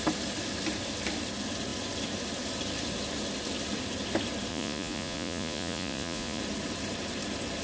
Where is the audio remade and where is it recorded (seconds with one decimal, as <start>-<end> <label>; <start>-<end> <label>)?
0.0-4.5 recorded; 4.5-6.4 remade; 6.4-7.6 recorded

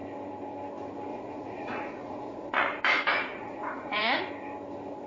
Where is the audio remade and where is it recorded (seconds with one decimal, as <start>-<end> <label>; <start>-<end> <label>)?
0.0-1.1 recorded; 1.1-4.2 remade; 4.2-5.1 recorded

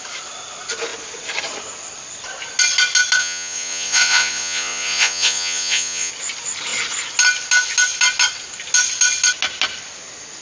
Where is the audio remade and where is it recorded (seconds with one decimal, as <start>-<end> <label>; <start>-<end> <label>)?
0.0-3.2 recorded; 3.2-6.1 remade; 6.1-10.4 recorded

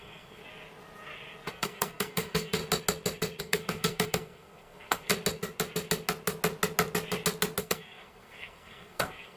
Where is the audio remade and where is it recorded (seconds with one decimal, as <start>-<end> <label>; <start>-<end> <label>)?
0.0-0.4 remade; 0.4-1.5 recorded; 1.5-2.6 remade; 2.6-3.4 recorded; 3.4-5.1 remade; 5.1-7.6 recorded; 7.6-9.4 remade